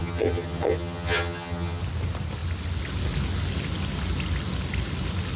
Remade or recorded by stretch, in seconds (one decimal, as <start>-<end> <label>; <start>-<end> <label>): 0.0-1.8 remade; 1.8-5.4 recorded